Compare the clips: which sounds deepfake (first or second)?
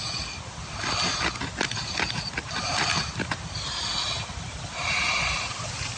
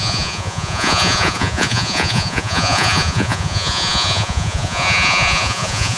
second